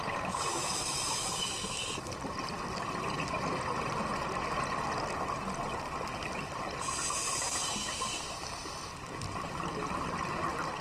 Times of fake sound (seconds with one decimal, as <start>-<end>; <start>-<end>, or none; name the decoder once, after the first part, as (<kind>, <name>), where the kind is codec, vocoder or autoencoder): 0.5-2.1 (autoencoder, DAC-VAE)

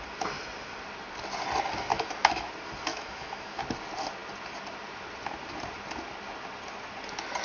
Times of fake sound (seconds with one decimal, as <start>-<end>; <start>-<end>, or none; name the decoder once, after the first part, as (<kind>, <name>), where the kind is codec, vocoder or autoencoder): 1.9-2.5 (autoencoder, DAC-VAE); 2.9-3.6

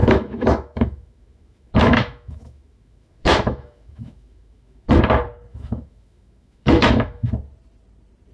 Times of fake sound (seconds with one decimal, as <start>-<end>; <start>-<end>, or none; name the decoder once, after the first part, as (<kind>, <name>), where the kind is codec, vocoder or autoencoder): 0.0-5.0 (autoencoder, DAC-VAE); 5.5-7.3

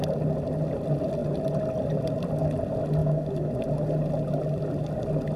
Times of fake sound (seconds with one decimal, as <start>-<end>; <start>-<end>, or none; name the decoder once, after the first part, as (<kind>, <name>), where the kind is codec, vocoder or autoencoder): 3.0-3.5 (autoencoder, DAC-VAE)

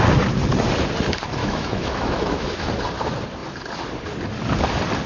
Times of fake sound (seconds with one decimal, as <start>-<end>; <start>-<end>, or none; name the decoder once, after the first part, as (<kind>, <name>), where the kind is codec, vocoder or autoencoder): 1.4-2.7 (autoencoder, DAC-VAE)

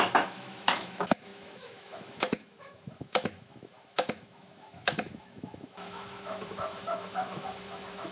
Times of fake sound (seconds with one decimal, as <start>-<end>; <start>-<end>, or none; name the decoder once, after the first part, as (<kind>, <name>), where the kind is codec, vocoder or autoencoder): 0.0-8.1 (autoencoder, DAC-VAE)

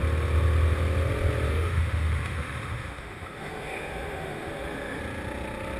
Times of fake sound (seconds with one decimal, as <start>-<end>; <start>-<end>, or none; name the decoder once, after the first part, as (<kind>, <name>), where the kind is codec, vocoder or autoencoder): 1.5-5.0 (autoencoder, DAC-VAE)